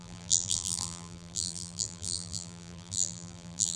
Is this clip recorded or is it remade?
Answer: remade